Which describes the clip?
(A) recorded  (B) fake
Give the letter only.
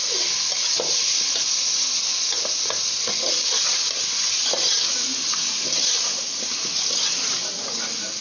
A